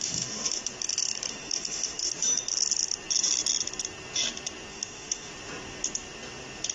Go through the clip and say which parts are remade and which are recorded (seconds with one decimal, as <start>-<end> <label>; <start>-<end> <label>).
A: 0.0-0.6 remade; 0.6-1.3 recorded; 1.3-2.1 remade; 2.1-4.7 recorded; 4.7-5.3 remade; 5.3-6.7 recorded